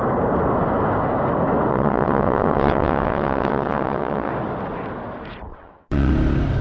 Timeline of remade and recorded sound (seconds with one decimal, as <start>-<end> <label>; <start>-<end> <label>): 0.0-1.7 recorded; 1.7-4.3 remade; 4.3-5.5 recorded; 5.5-6.1 remade; 6.1-6.6 recorded